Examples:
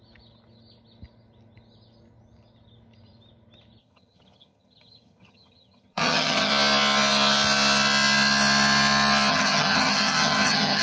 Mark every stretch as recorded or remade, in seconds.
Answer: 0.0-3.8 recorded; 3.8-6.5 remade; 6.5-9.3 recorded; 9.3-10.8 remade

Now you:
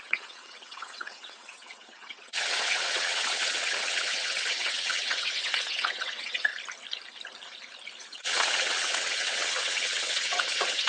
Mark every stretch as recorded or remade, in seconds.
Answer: 0.0-6.5 remade; 6.5-8.0 recorded; 8.0-10.9 remade

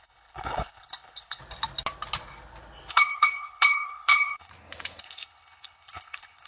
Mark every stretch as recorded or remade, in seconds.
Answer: 0.0-1.4 remade; 1.4-2.9 recorded; 2.9-4.5 remade; 4.5-5.0 recorded; 5.0-6.5 remade

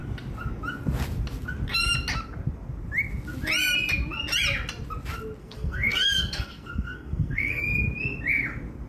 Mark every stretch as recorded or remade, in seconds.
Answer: 0.0-5.4 recorded; 5.4-7.6 remade; 7.6-8.9 recorded

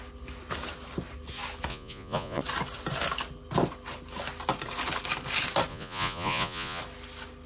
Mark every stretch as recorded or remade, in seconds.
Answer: 0.0-1.7 recorded; 1.7-2.4 remade; 2.4-5.7 recorded; 5.7-6.8 remade; 6.8-7.5 recorded